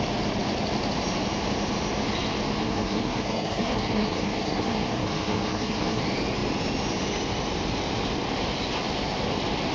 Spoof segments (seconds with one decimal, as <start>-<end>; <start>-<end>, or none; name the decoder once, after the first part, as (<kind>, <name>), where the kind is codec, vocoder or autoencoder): 2.6-6.0 (codec, SNAC)